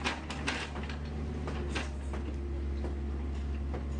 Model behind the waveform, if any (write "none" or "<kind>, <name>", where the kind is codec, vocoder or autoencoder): none